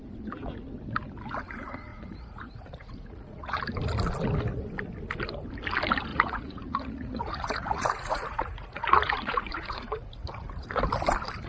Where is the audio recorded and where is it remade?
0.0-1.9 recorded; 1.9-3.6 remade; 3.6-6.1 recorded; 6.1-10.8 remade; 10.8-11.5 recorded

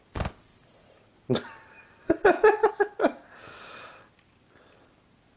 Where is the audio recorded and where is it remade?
0.0-5.4 recorded

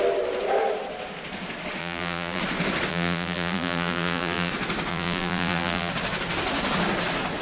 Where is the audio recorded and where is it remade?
0.0-1.8 recorded; 1.8-2.4 remade; 2.4-2.9 recorded; 2.9-4.5 remade; 4.5-4.9 recorded; 4.9-5.9 remade; 5.9-7.4 recorded

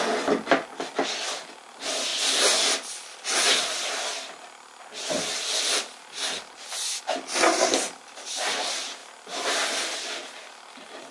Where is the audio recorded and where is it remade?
0.0-11.1 recorded

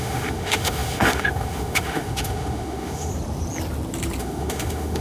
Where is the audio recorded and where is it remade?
0.0-3.1 remade; 3.1-4.2 recorded; 4.2-5.0 remade

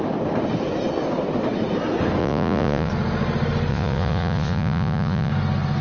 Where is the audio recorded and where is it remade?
0.0-2.2 recorded; 2.2-2.9 remade; 2.9-3.7 recorded; 3.7-5.3 remade; 5.3-5.8 recorded

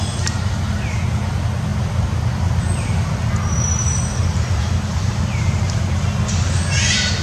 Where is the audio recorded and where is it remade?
0.0-1.7 recorded; 1.7-5.8 remade; 5.8-7.2 recorded

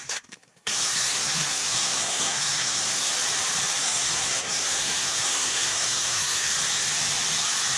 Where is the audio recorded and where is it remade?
0.0-3.1 remade; 3.1-3.8 recorded; 3.8-6.5 remade; 6.5-7.8 recorded